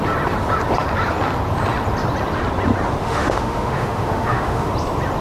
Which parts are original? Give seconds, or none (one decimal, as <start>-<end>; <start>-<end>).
0.0-3.0; 4.7-5.2

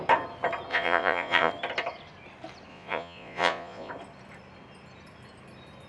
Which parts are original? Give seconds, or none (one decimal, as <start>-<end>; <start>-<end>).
0.0-0.7; 1.5-2.7; 3.9-5.9

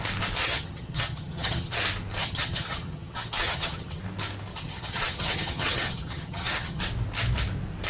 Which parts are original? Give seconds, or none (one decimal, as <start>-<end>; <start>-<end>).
0.0-0.4; 1.8-2.2; 4.0-4.5; 6.8-7.9

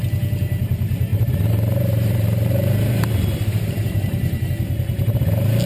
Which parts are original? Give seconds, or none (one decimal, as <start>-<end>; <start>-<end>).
0.0-1.1; 4.5-5.7

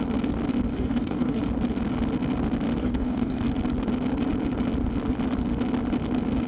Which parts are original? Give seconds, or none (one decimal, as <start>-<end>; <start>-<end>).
0.0-0.7; 1.4-2.8; 3.4-6.5

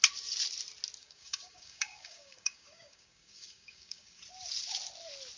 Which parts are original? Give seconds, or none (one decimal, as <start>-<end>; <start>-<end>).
0.0-1.0; 4.2-5.4